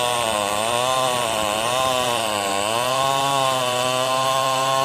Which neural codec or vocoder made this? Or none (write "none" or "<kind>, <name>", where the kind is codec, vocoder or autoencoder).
vocoder, BigVGAN v2